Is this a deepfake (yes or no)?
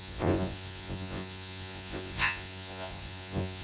yes